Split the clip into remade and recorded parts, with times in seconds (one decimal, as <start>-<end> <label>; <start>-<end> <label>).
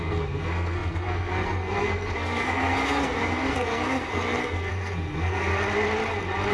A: 0.0-5.5 remade; 5.5-6.5 recorded